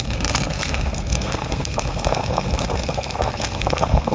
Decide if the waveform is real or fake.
fake